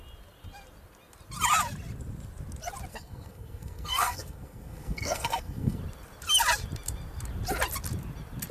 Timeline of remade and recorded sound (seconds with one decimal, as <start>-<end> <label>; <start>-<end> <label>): 0.0-2.9 recorded; 2.9-5.8 remade; 5.8-8.5 recorded